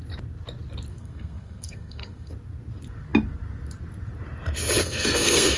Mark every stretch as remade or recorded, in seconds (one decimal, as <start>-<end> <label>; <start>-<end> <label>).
0.0-0.9 recorded; 0.9-2.3 remade; 2.3-4.8 recorded; 4.8-5.6 remade